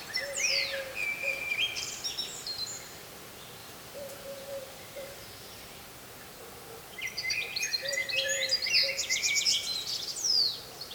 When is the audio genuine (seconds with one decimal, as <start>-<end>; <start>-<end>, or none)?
0.0-1.2; 3.1-3.6; 5.6-8.0; 8.7-10.9